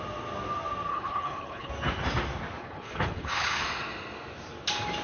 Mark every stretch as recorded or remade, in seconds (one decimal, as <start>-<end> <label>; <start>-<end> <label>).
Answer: 0.0-0.9 recorded; 0.9-1.7 remade; 1.7-2.6 recorded; 2.6-3.6 remade; 3.6-5.0 recorded